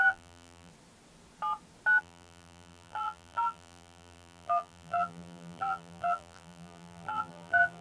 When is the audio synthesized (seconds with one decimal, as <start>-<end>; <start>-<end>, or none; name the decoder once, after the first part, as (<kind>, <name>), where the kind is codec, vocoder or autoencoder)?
0.0-0.7 (vocoder, BigVGAN v2); 2.0-7.8